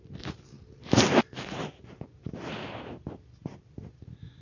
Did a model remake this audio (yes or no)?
no